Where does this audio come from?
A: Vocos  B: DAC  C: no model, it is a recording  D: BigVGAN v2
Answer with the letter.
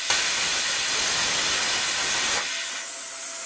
C